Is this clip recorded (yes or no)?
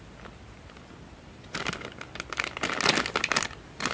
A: yes